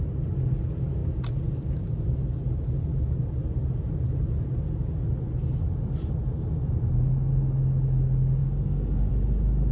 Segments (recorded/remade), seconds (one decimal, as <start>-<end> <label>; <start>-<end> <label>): 0.0-8.4 recorded; 8.4-9.1 remade; 9.1-9.7 recorded